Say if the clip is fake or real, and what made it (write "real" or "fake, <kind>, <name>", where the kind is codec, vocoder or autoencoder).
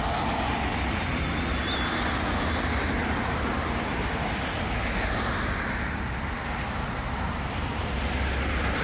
real